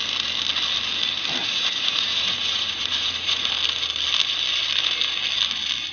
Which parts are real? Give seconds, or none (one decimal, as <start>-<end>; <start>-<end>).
0.0-1.4; 3.5-5.9